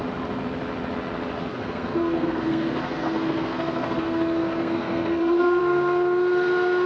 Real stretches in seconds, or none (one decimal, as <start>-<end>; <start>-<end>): 0.0-1.5; 5.6-6.9